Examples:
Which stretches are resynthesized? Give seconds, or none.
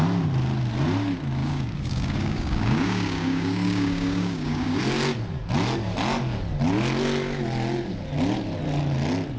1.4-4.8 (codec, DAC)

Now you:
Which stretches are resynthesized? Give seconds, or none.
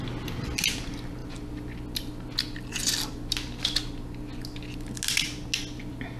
none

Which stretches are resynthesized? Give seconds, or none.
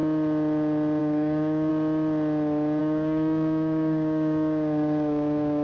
1.0-1.7 (codec, DAC); 2.8-5.6